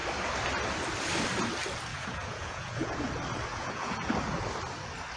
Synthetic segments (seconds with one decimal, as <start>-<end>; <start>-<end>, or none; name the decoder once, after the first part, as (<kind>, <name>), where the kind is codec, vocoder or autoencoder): 1.9-3.1 (vocoder, Vocos); 3.5-4.1